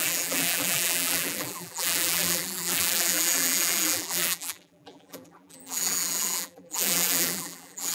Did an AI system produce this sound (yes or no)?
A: yes